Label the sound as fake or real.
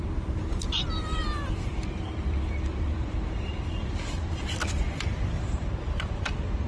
fake